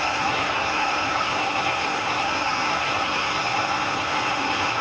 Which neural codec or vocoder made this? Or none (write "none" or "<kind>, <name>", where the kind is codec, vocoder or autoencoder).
codec, SNAC